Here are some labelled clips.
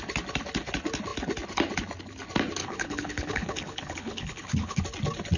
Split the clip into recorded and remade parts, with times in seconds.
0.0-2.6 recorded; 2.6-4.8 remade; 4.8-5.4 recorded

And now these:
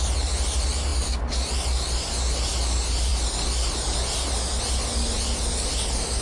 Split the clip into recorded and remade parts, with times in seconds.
0.0-6.2 recorded

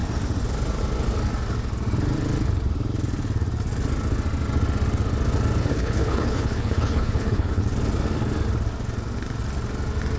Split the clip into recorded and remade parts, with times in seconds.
0.0-5.6 recorded; 5.6-7.6 remade; 7.6-10.2 recorded